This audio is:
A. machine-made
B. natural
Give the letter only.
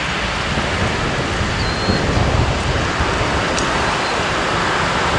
B